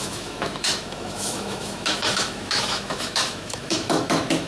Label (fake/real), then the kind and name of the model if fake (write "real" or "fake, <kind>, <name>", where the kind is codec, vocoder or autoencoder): fake, autoencoder, DAC-VAE